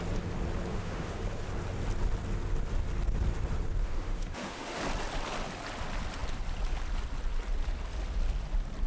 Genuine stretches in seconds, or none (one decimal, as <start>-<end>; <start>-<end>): 0.0-0.7; 1.2-3.8; 4.8-8.9